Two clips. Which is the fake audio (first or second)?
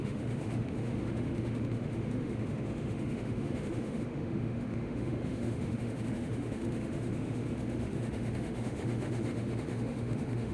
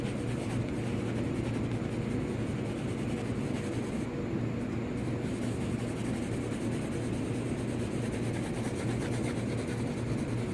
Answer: first